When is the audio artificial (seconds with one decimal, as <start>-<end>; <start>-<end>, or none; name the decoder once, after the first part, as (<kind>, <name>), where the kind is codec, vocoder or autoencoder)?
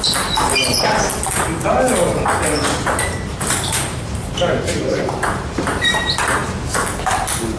3.3-5.8 (vocoder, BigVGAN v2)